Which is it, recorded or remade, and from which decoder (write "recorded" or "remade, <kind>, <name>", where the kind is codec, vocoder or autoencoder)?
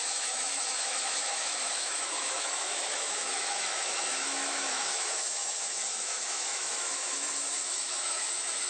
remade, autoencoder, DAC-VAE